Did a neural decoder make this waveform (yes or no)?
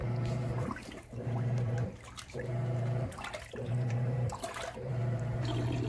yes